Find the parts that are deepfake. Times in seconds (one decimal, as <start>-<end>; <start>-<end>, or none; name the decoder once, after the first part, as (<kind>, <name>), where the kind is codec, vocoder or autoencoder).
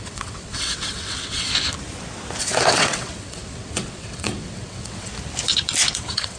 0.0-1.5 (vocoder, WaveNeXt); 2.4-5.1; 6.0-6.4